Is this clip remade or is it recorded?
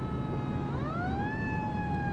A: recorded